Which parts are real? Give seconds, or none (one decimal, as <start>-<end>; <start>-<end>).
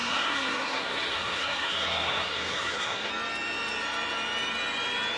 3.1-5.2